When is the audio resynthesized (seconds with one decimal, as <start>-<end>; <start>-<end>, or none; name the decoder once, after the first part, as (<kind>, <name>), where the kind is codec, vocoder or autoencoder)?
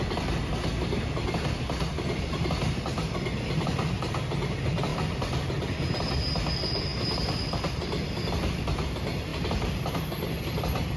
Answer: 4.9-5.8 (vocoder, BigVGAN v2); 6.9-8.3; 9.3-9.9